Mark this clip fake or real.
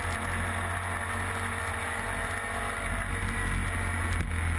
real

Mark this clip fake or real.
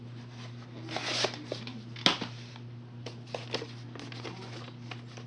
real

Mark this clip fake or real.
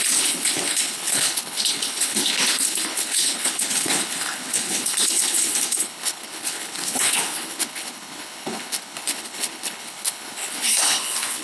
fake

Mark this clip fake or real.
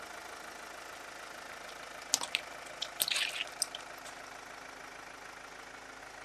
real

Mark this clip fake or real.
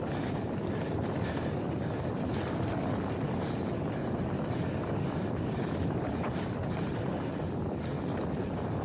real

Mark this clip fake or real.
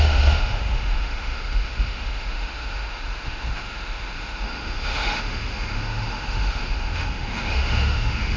fake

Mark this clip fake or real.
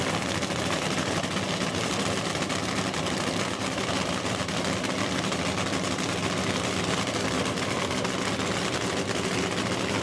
real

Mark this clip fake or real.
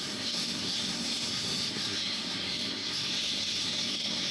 fake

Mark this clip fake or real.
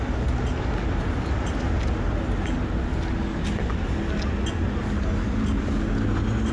real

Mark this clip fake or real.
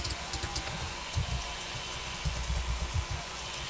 fake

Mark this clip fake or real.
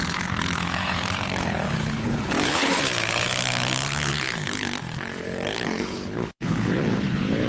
fake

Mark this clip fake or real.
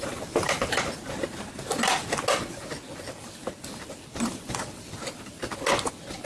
real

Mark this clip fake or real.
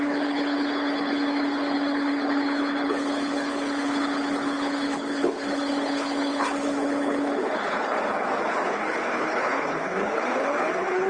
fake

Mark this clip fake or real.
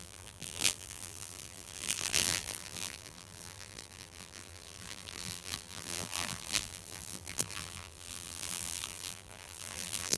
fake